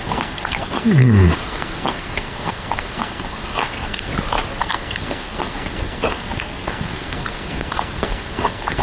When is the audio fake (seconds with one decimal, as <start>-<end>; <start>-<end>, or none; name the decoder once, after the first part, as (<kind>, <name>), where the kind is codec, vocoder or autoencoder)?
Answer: 0.0-4.1 (codec, SNAC); 4.6-8.8